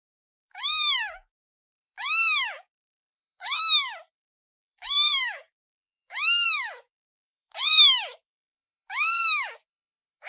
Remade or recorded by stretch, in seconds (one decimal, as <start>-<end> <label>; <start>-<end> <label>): 0.0-3.6 remade; 3.6-4.1 recorded; 4.1-10.3 remade